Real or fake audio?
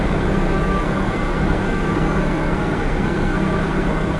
fake